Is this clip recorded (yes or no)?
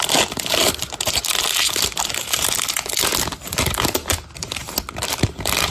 yes